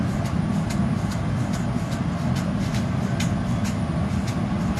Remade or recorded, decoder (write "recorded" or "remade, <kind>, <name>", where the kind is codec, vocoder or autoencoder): recorded